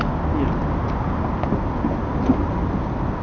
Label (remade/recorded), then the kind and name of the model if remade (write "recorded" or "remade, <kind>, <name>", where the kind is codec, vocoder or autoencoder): recorded